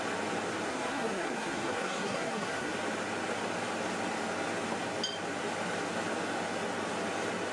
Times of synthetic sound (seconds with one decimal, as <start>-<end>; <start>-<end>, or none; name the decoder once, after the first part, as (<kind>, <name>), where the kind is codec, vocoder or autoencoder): 0.7-2.7 (codec, SNAC)